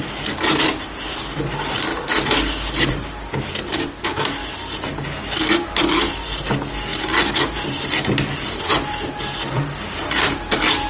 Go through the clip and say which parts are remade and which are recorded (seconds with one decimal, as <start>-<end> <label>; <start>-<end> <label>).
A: 0.0-1.9 recorded; 1.9-2.9 remade; 2.9-10.9 recorded